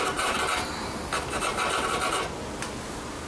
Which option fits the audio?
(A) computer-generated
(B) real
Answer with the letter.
B